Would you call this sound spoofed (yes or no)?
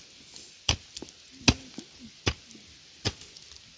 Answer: no